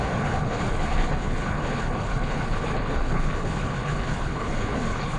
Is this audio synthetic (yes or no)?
yes